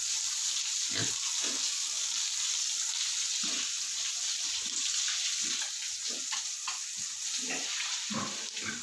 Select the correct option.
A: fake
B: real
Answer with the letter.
A